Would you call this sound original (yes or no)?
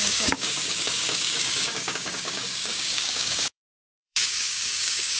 no